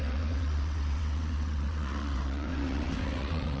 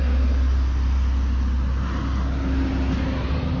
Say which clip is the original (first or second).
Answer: second